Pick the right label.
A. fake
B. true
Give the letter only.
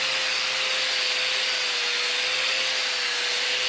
B